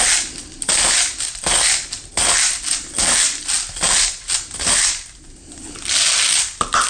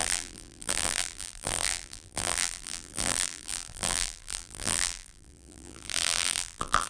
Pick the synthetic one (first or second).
second